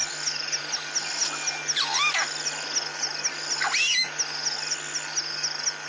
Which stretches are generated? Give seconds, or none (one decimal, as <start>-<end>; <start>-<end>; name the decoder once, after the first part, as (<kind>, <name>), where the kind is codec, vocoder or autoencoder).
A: none